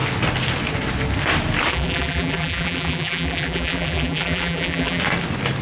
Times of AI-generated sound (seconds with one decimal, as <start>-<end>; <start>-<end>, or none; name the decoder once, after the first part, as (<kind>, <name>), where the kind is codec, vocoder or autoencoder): 1.7-5.0 (vocoder, BigVGAN v2)